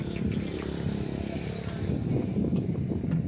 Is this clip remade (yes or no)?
no